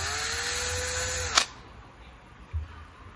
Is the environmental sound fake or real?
real